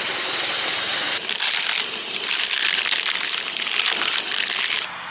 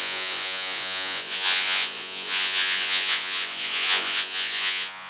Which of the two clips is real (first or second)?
first